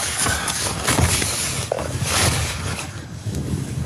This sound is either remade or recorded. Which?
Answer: remade